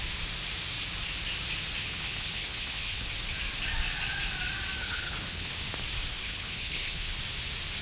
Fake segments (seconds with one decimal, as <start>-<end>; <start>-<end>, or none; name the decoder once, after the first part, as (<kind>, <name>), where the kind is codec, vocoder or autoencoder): 1.8-3.1 (codec, HILCodec); 4.8-5.5; 6.2-7.2

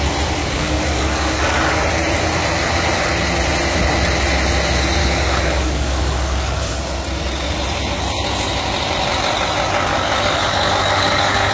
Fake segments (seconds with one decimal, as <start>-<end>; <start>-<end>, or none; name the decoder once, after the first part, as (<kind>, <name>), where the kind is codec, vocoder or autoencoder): 0.4-1.8 (codec, DAC); 5.0-6.7; 9.9-11.5

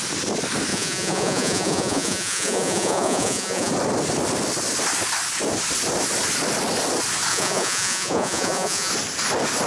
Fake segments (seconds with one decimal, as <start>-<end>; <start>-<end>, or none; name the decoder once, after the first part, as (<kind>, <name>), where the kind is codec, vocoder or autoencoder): 0.7-3.7 (vocoder, Vocos); 7.3-8.9

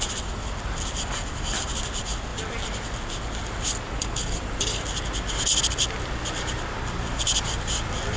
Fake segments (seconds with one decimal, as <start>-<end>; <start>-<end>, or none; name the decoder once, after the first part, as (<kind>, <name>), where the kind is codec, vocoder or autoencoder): none

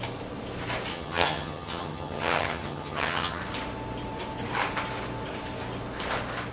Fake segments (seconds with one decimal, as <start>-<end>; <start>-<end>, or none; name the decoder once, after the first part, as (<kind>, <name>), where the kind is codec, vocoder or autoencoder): 0.9-3.4 (vocoder, HiFi-GAN)

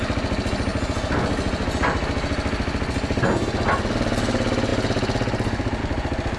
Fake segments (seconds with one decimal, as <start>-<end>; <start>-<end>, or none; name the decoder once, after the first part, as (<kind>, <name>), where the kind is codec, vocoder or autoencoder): none

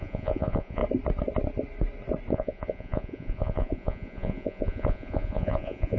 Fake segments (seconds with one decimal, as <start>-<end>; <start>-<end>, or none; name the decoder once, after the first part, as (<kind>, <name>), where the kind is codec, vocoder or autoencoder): 0.0-0.8 (vocoder, Vocos); 2.3-6.0